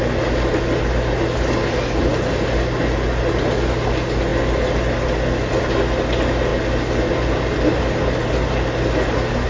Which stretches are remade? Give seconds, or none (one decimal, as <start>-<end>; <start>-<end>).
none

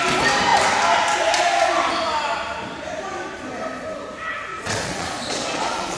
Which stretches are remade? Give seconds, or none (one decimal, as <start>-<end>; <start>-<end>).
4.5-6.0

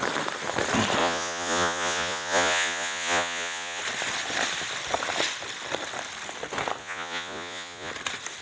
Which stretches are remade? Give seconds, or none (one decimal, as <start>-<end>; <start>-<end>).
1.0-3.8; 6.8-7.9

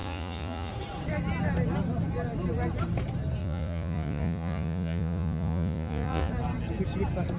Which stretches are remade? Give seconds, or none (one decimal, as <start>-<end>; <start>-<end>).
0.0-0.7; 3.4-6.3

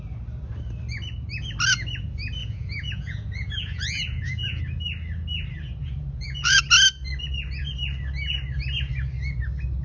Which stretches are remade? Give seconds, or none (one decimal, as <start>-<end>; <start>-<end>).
2.4-4.6; 5.8-6.6

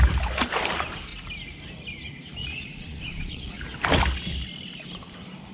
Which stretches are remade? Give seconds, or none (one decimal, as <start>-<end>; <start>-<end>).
2.4-3.6